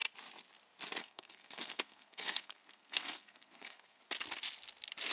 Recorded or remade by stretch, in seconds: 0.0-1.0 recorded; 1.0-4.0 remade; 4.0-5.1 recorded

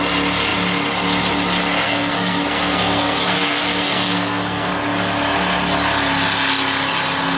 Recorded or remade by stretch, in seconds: 0.0-1.8 recorded; 1.8-4.7 remade; 4.7-7.4 recorded

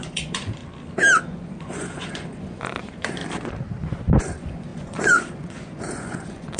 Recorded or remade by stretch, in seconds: 0.0-0.6 remade; 0.6-1.2 recorded; 1.2-3.2 remade; 3.2-4.2 recorded; 4.2-6.6 remade

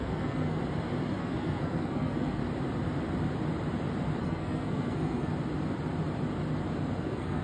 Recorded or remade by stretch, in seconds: 0.0-0.6 remade; 0.6-1.2 recorded; 1.2-2.4 remade; 2.4-4.2 recorded; 4.2-5.3 remade; 5.3-7.0 recorded; 7.0-7.4 remade

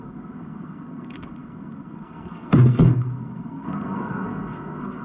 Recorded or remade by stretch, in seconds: 0.0-5.0 remade

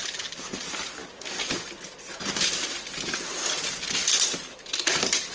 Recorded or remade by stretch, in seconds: 0.0-4.0 recorded; 4.0-4.6 remade; 4.6-5.3 recorded